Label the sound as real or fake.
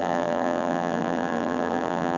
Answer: fake